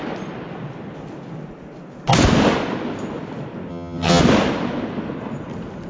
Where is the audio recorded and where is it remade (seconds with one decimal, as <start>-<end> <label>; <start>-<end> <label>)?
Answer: 0.0-3.7 recorded; 3.7-4.2 remade; 4.2-5.9 recorded

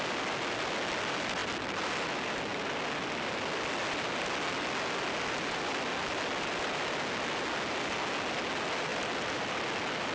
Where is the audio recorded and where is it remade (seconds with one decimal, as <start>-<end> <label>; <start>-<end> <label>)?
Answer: 0.0-10.1 recorded

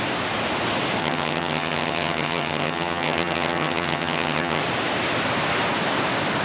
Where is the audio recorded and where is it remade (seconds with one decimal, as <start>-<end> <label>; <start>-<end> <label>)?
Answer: 0.0-1.0 recorded; 1.0-4.6 remade; 4.6-6.4 recorded

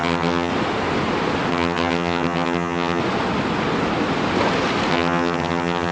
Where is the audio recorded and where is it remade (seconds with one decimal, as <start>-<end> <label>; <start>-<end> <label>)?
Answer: 0.0-0.5 remade; 0.5-1.5 recorded; 1.5-3.0 remade; 3.0-4.9 recorded; 4.9-5.9 remade

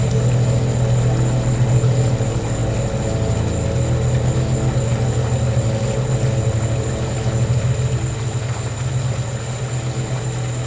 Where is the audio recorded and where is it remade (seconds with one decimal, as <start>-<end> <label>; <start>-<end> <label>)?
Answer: 0.0-10.7 recorded